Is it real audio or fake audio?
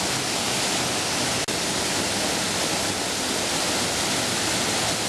real